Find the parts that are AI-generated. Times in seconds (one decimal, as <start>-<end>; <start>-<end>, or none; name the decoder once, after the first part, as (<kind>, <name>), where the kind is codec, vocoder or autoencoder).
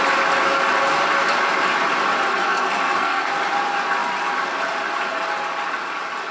2.3-3.3 (codec, SNAC)